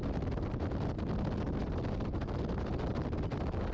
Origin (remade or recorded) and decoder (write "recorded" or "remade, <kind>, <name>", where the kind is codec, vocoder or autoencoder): recorded